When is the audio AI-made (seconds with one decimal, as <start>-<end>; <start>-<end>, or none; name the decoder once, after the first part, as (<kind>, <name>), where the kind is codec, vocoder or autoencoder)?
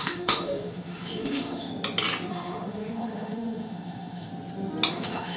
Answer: 0.0-1.7 (autoencoder, DAC-VAE); 2.3-4.3; 4.9-5.4